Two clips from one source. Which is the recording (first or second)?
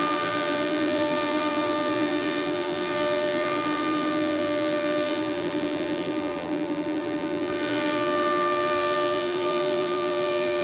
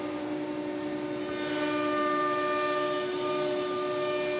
second